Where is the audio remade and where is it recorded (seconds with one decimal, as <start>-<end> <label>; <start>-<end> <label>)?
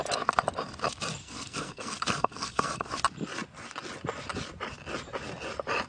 0.0-1.2 recorded; 1.2-2.9 remade; 2.9-5.9 recorded